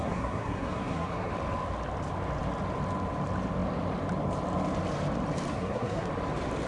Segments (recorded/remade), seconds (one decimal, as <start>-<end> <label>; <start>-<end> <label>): 0.0-1.3 remade; 1.3-5.5 recorded; 5.5-6.1 remade; 6.1-6.7 recorded